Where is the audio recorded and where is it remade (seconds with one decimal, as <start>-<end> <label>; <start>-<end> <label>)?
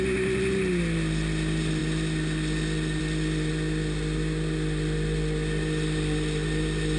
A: 0.0-7.0 recorded